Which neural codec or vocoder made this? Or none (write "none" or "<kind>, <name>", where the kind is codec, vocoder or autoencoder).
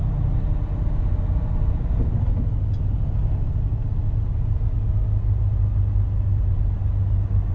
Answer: none